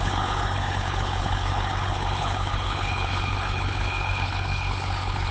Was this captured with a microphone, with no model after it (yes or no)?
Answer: no